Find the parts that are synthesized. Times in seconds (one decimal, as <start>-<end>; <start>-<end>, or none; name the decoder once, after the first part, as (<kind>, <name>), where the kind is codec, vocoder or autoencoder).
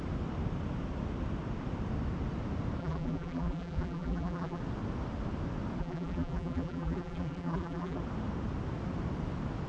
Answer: 2.8-4.6 (vocoder, BigVGAN v2); 5.8-8.0